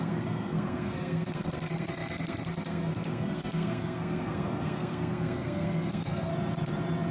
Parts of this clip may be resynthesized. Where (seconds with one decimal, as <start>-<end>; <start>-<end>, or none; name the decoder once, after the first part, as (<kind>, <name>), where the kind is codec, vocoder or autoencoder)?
0.0-6.3 (codec, SNAC)